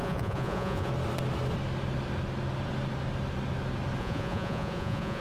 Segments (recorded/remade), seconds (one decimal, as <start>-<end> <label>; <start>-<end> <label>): 0.0-0.9 remade; 0.9-4.0 recorded; 4.0-5.2 remade